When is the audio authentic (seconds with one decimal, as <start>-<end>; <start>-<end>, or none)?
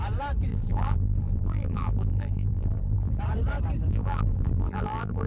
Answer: 0.0-0.5; 3.2-3.9